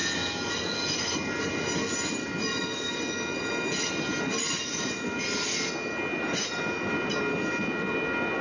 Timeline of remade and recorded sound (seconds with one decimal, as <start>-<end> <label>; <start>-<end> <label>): 0.0-8.4 recorded